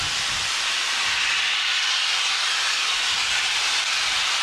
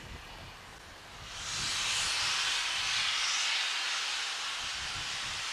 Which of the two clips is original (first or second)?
second